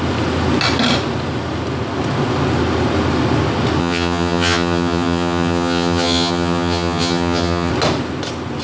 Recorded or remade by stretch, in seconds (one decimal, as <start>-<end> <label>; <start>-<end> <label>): 0.0-3.8 recorded; 3.8-7.7 remade; 7.7-8.6 recorded

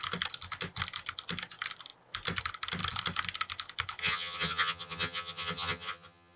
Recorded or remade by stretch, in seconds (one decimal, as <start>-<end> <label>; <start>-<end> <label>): 0.0-4.0 recorded; 4.0-6.4 remade

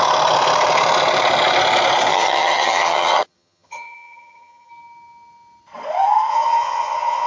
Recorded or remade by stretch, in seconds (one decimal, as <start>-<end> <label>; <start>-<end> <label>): 0.0-2.1 recorded; 2.1-4.7 remade; 4.7-6.3 recorded; 6.3-7.3 remade

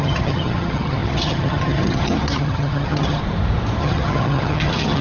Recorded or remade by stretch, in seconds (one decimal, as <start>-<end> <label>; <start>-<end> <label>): 0.0-3.2 remade; 3.2-3.8 recorded; 3.8-5.0 remade

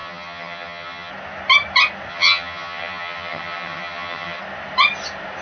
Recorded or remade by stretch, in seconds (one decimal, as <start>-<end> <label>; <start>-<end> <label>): 0.0-1.1 remade; 1.1-2.1 recorded; 2.1-4.4 remade; 4.4-5.4 recorded

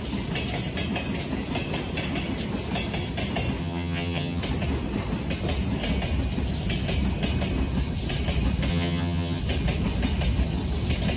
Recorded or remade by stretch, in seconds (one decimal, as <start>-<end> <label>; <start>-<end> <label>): 0.0-3.6 recorded; 3.6-4.4 remade; 4.4-8.7 recorded; 8.7-9.4 remade; 9.4-11.2 recorded

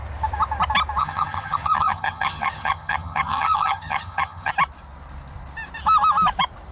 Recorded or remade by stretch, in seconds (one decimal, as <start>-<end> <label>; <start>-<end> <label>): 0.0-1.0 recorded; 1.0-4.5 remade; 4.5-6.7 recorded

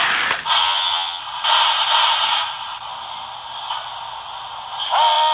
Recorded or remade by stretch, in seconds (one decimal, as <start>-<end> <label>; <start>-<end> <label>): 0.0-0.6 recorded; 0.6-1.2 remade; 1.2-5.3 recorded